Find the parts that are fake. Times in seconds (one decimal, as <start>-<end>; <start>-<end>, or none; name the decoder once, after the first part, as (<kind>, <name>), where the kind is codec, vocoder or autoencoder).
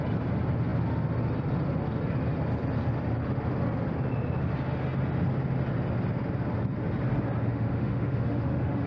7.5-8.9 (autoencoder, DAC-VAE)